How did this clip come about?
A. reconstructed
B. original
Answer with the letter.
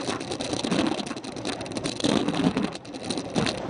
B